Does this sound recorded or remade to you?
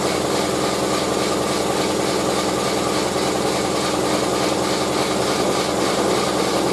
recorded